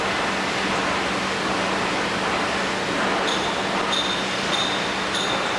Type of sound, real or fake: real